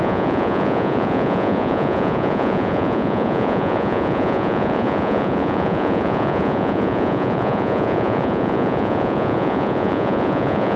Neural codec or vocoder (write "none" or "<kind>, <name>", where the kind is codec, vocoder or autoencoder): vocoder, Vocos